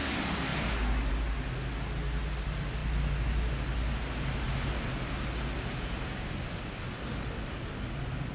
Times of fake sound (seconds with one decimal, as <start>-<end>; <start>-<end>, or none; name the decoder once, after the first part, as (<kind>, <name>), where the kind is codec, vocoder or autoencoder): none